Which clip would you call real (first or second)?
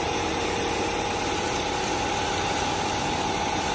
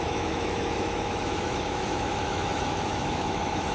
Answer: first